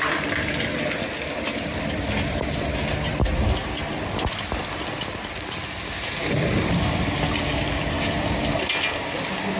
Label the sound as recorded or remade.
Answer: recorded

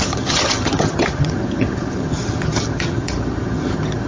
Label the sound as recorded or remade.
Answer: remade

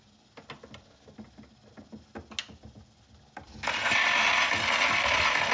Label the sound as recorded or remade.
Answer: recorded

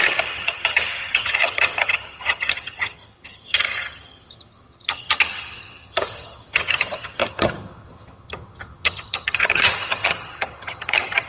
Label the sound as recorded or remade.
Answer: remade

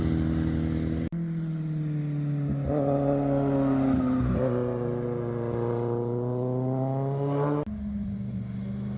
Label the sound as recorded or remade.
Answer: recorded